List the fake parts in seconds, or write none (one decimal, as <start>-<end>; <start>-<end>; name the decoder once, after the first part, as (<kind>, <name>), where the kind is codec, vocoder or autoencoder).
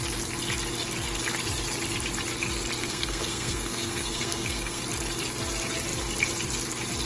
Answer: 2.8-4.8 (codec, SNAC)